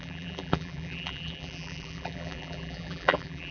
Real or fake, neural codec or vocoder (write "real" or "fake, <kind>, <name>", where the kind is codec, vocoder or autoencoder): fake, vocoder, BigVGAN v2